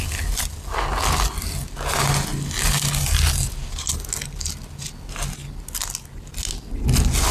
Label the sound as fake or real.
real